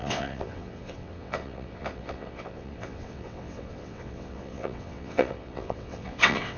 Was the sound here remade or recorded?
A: remade